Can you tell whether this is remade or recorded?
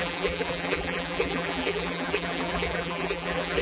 remade